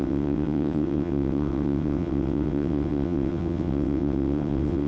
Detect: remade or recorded remade